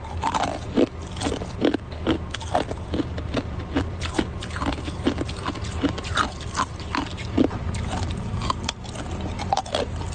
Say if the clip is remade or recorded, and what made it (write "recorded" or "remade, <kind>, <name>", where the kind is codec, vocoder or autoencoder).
recorded